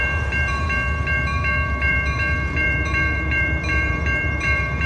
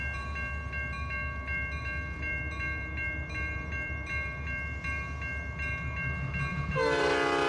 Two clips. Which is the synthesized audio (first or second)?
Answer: first